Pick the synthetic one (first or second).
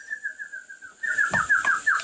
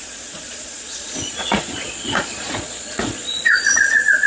second